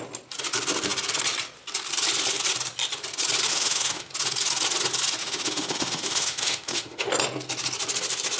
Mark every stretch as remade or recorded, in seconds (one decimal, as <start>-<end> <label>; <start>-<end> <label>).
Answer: 0.0-3.5 recorded; 3.5-4.1 remade; 4.1-5.2 recorded; 5.2-7.1 remade; 7.1-8.4 recorded